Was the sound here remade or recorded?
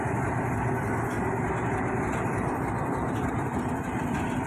recorded